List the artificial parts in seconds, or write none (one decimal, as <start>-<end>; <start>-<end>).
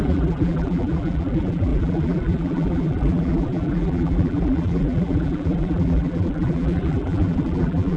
0.0-8.0